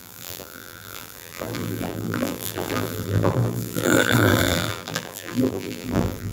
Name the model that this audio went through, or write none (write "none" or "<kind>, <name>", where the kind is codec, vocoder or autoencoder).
vocoder, BigVGAN v2